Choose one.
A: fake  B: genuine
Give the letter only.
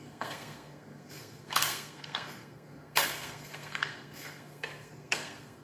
A